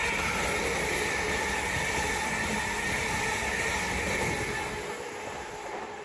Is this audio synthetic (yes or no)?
no